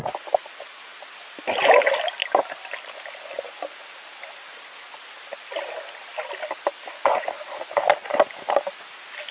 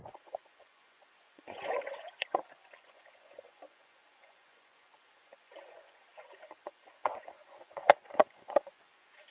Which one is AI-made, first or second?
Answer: second